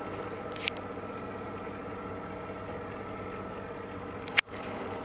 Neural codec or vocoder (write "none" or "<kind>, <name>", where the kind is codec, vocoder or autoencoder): none